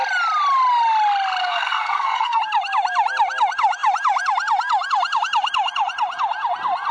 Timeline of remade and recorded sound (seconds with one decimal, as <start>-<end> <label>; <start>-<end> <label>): 0.0-1.4 recorded; 1.4-2.4 remade; 2.4-6.9 recorded